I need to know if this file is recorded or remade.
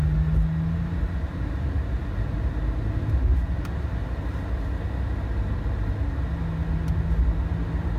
recorded